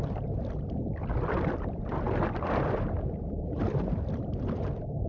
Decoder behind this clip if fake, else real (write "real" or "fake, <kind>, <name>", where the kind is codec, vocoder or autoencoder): real